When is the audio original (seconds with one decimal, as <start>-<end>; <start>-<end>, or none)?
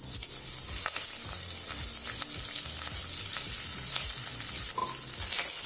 0.0-5.7